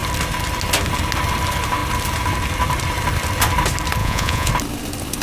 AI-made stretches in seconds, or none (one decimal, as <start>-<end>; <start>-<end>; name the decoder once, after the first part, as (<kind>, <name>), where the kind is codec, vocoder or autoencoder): 4.0-4.5 (vocoder, Vocos)